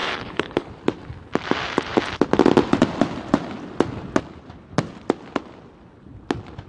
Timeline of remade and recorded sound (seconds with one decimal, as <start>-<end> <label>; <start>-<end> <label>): 0.0-0.7 remade; 0.7-6.7 recorded